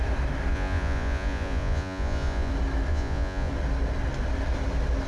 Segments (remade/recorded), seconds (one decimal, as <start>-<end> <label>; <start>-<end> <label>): 0.0-0.5 recorded; 0.5-2.5 remade; 2.5-2.9 recorded; 2.9-3.5 remade; 3.5-5.1 recorded